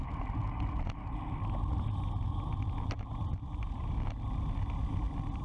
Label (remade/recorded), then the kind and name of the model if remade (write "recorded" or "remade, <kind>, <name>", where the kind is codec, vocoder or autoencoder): recorded